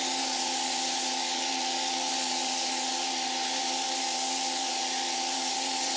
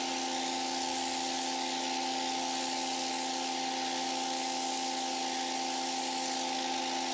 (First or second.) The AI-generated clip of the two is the first